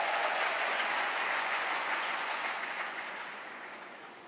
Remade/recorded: remade